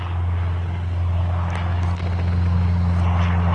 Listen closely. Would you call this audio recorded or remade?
recorded